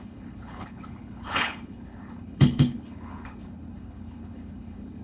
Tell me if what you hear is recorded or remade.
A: remade